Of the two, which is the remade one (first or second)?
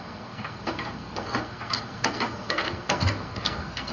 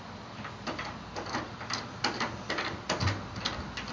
first